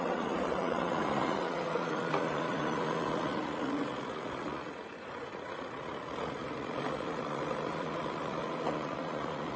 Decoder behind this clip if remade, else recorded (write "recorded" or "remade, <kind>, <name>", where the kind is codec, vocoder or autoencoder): remade, vocoder, Vocos